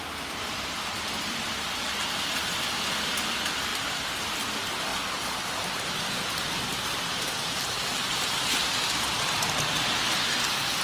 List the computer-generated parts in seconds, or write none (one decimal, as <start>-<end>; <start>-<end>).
3.7-4.3; 4.9-7.1